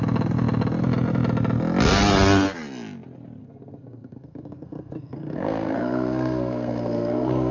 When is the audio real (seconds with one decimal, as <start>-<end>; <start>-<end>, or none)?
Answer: 0.0-3.4